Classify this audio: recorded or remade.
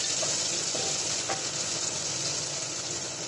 remade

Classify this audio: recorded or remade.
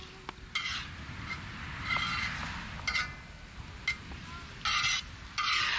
recorded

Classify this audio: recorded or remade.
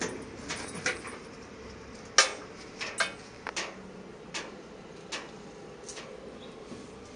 recorded